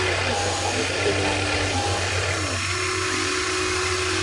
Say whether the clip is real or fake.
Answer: real